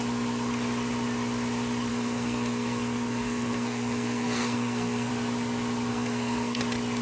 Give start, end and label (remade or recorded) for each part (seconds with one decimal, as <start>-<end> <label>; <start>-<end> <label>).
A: 0.0-1.9 recorded; 1.9-5.1 remade; 5.1-5.9 recorded; 5.9-6.6 remade; 6.6-7.0 recorded